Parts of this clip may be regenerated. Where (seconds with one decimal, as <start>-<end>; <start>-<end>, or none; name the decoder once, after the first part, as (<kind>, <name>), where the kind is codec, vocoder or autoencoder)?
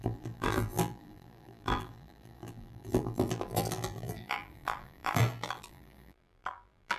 0.0-7.0 (vocoder, BigVGAN v2)